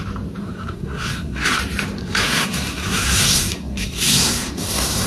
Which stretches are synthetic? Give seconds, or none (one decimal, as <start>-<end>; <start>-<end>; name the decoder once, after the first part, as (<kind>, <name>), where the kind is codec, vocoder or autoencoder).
0.4-1.6 (codec, SNAC); 2.0-5.1